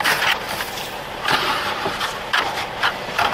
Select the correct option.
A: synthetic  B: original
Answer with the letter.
A